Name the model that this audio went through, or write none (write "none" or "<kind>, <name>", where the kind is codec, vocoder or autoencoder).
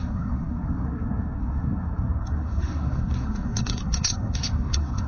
codec, SNAC